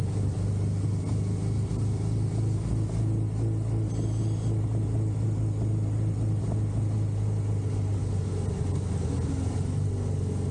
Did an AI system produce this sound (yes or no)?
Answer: no